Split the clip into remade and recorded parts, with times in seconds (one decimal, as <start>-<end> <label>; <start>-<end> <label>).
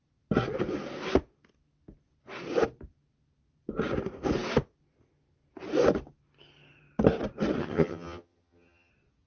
0.0-7.6 recorded; 7.6-8.9 remade; 8.9-9.3 recorded